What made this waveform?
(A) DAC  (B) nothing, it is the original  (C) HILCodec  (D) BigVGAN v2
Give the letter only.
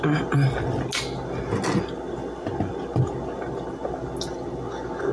B